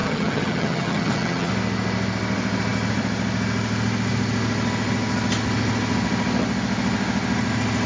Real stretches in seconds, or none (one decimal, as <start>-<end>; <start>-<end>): 1.5-7.9